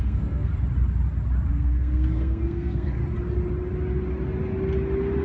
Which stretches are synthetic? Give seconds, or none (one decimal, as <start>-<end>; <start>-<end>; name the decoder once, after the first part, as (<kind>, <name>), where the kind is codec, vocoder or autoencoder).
0.0-0.5 (codec, SNAC); 1.5-3.0